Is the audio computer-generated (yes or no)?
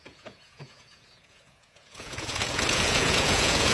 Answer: yes